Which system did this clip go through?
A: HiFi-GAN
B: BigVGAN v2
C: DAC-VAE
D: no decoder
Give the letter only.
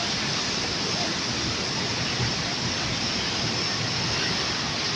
D